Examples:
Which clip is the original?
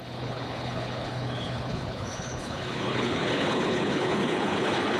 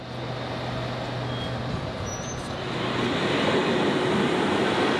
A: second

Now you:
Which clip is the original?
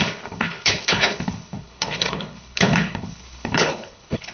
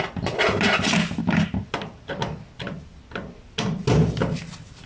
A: second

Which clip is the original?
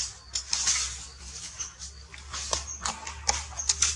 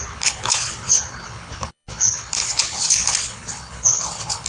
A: first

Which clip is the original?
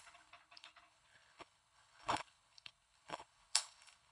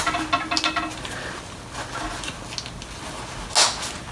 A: second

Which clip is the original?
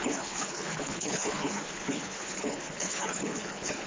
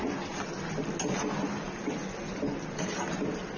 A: second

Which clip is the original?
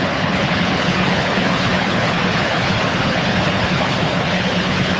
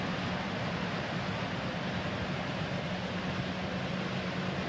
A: second